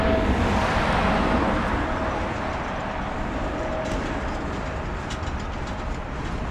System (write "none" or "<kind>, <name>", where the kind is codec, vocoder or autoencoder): none